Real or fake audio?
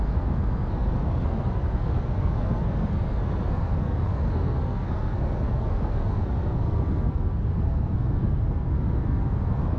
fake